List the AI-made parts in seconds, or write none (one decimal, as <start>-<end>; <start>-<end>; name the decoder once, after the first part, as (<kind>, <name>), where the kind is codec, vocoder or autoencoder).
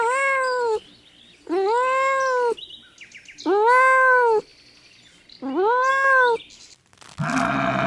none